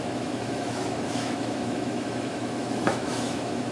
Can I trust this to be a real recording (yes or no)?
no